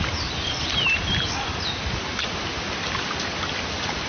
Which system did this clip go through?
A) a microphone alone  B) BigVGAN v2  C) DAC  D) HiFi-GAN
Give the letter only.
A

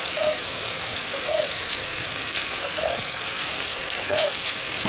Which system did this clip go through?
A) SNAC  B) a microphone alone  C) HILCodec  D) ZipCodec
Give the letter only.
A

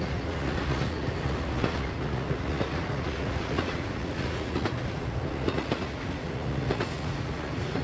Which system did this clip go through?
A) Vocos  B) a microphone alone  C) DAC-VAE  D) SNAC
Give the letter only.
A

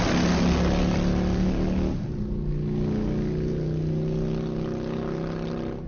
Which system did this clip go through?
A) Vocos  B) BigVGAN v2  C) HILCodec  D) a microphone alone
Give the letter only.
D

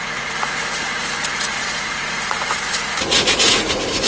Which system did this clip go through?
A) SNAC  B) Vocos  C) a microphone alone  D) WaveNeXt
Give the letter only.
B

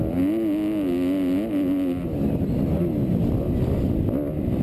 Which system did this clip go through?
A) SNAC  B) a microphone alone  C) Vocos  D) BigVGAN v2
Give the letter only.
B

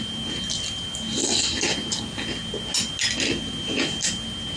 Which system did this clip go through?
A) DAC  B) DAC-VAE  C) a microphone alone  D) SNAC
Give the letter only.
C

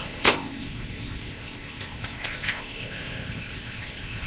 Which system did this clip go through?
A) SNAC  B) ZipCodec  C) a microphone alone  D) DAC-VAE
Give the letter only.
B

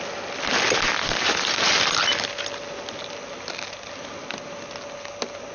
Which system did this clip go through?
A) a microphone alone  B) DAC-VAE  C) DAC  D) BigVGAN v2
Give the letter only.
A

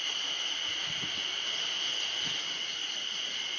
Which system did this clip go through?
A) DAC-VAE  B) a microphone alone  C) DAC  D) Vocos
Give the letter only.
B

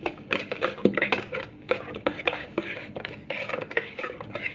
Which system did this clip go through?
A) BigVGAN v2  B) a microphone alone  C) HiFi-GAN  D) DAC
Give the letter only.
D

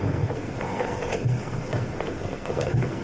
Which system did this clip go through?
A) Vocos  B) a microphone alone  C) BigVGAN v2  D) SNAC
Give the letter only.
D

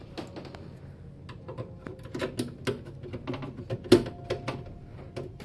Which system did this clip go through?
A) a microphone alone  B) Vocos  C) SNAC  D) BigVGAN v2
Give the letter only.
A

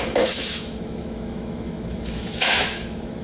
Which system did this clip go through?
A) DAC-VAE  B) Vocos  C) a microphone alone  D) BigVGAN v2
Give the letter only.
A